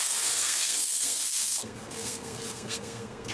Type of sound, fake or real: fake